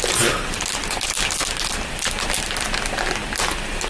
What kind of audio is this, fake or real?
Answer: real